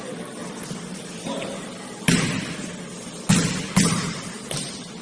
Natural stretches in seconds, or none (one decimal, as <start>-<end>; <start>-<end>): 0.0-0.4; 3.3-5.0